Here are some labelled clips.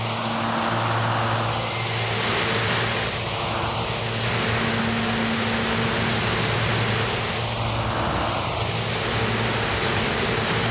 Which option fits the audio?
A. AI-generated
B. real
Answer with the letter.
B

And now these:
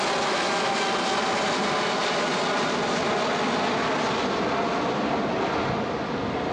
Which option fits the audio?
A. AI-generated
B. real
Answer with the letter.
B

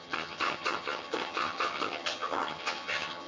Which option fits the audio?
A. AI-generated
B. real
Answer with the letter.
A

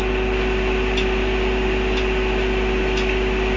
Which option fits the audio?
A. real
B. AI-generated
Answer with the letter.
A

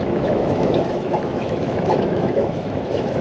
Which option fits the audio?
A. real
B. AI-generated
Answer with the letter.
B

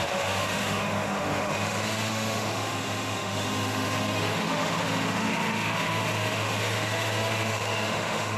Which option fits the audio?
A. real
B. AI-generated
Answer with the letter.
B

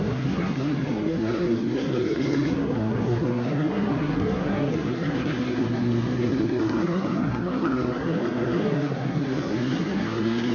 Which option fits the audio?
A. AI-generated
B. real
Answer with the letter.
A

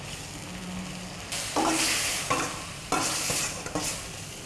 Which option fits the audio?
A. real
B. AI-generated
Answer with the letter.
A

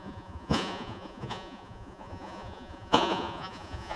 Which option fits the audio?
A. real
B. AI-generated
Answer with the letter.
B